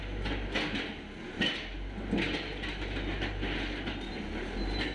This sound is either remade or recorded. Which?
recorded